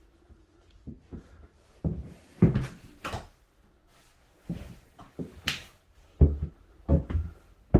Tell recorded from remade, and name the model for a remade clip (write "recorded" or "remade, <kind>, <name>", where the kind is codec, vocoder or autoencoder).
recorded